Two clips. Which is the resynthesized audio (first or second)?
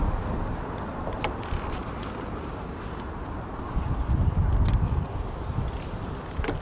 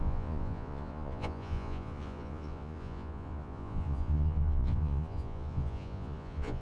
second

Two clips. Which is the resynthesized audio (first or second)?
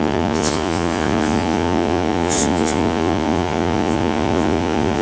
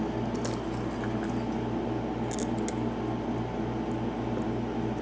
first